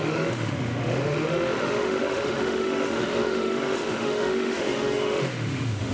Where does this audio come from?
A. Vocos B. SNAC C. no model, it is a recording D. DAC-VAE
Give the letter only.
D